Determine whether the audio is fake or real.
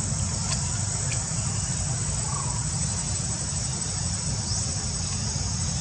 real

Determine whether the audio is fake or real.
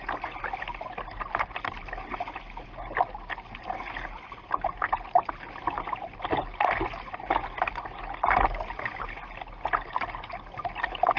real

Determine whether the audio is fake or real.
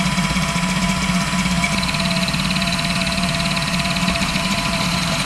fake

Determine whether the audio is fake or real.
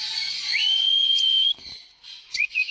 fake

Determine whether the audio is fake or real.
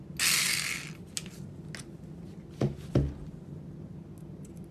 real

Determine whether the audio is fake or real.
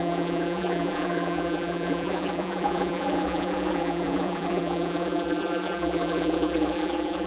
fake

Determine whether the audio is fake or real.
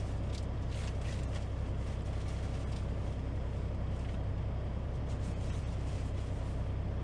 real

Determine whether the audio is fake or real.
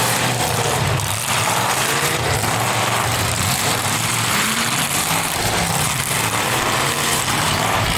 fake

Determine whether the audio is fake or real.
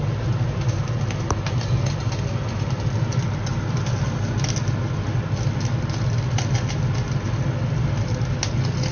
real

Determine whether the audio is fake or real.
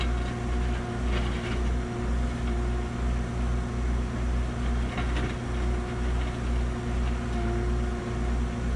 real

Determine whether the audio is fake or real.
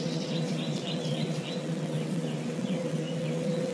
fake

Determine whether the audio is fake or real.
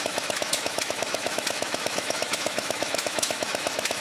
fake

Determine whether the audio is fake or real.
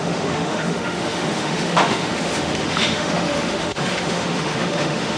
fake